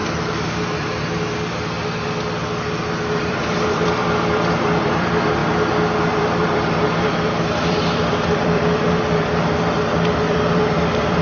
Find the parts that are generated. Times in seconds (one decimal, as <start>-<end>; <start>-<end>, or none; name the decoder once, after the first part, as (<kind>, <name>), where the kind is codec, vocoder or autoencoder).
3.2-5.4 (vocoder, BigVGAN v2); 6.1-11.2